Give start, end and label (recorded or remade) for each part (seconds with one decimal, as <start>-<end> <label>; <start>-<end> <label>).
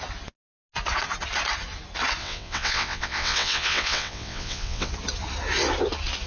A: 0.0-2.2 recorded; 2.2-4.9 remade; 4.9-6.3 recorded